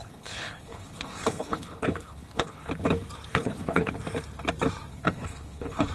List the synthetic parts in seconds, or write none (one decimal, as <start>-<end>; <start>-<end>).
0.0-2.7; 3.3-3.9; 4.9-5.9